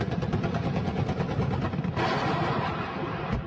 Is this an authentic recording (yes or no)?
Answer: yes